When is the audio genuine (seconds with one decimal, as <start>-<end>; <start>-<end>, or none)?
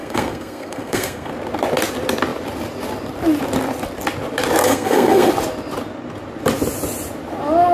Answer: 1.3-4.6; 5.3-7.7